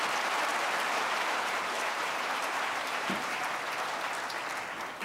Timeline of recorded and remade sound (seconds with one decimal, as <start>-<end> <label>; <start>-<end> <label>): 0.0-0.5 recorded; 0.5-3.5 remade; 3.5-5.0 recorded